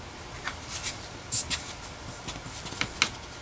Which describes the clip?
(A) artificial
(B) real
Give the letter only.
B